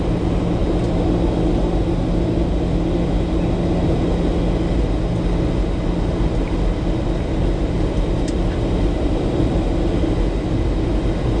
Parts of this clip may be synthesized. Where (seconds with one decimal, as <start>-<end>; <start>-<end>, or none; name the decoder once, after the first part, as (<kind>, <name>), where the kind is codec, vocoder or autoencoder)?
6.1-9.4 (vocoder, BigVGAN v2)